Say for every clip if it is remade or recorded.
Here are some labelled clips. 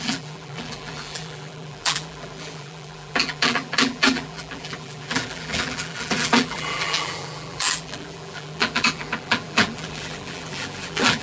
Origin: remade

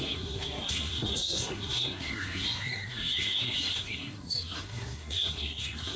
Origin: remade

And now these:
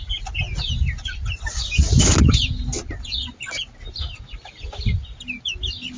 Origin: recorded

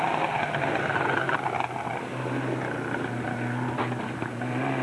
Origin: recorded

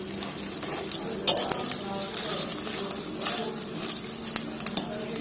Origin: recorded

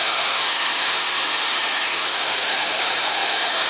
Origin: remade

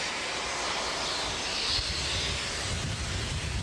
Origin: recorded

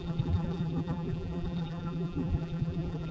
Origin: remade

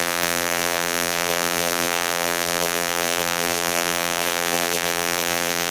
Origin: remade